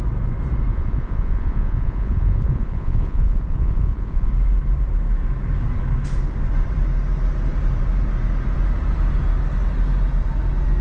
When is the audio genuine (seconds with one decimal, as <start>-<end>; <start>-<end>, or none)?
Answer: 0.0-0.7; 4.3-10.8